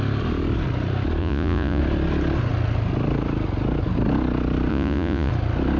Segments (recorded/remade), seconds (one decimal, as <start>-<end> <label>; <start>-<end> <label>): 0.0-1.2 recorded; 1.2-1.8 remade; 1.8-4.7 recorded; 4.7-5.3 remade; 5.3-5.8 recorded